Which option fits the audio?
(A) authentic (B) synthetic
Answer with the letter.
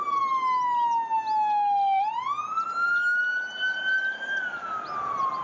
A